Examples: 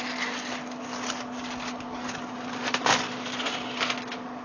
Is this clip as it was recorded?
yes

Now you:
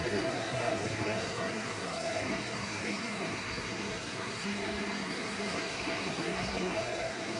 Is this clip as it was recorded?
no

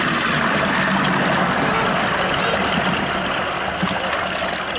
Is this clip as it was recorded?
yes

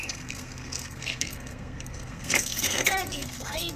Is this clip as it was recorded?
no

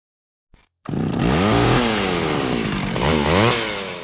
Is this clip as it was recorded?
yes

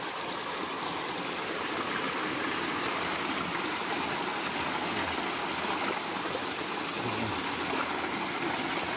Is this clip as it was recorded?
yes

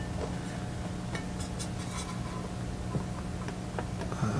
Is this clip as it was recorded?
yes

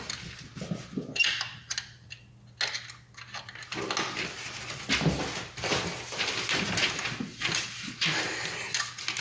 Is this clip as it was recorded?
yes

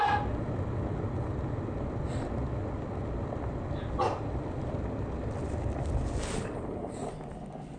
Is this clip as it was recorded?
yes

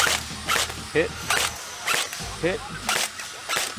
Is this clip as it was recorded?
yes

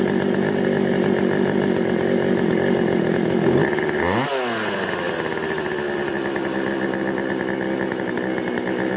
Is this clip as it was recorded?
yes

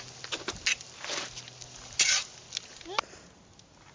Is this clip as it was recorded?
yes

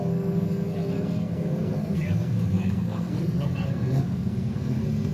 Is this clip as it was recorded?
no